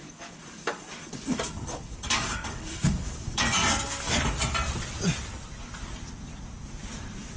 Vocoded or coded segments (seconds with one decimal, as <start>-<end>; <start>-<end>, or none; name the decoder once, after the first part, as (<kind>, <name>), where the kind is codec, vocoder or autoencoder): 0.0-3.4 (codec, DAC)